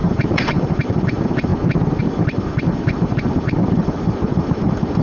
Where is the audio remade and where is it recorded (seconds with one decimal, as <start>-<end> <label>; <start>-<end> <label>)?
0.0-1.5 remade; 1.5-2.0 recorded; 2.0-5.0 remade